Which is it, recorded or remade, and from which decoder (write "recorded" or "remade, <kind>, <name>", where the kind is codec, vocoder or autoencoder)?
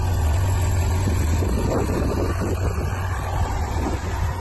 remade, vocoder, Vocos